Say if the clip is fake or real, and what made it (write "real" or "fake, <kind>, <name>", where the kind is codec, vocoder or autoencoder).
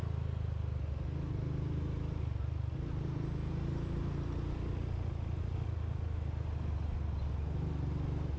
real